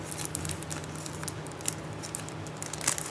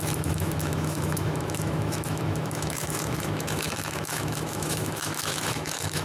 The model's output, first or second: second